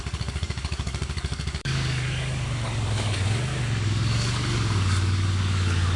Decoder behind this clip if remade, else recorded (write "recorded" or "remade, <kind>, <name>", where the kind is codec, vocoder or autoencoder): remade, codec, DAC